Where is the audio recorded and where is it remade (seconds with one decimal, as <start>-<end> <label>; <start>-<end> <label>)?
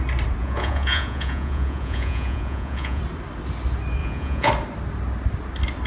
0.0-0.4 recorded; 0.4-3.0 remade; 3.0-4.0 recorded; 4.0-4.5 remade; 4.5-5.9 recorded